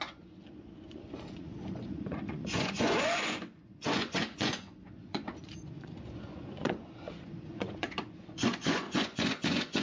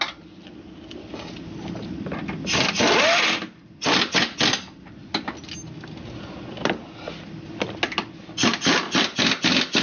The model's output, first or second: first